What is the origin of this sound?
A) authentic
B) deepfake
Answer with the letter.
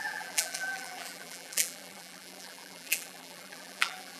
B